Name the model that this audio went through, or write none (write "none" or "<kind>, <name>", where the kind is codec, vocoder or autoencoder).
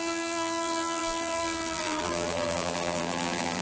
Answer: vocoder, BigVGAN v2